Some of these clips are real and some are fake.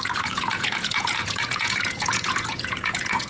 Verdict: fake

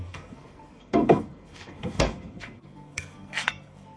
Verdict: fake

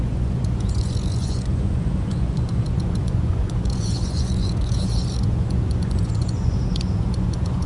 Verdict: fake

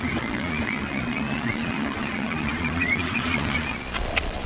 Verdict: fake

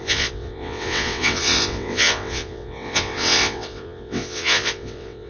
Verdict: fake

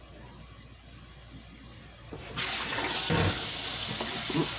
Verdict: real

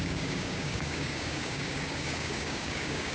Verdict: fake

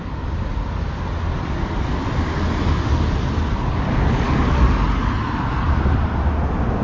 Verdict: real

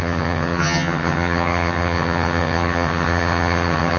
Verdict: fake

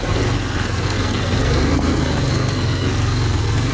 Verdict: fake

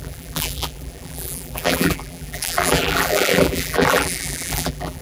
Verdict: fake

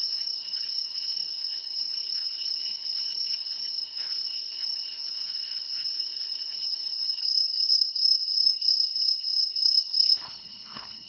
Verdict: fake